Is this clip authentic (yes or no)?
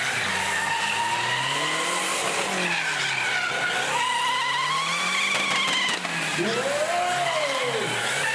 yes